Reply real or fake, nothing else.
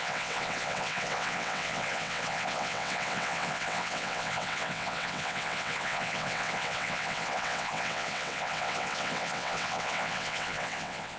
fake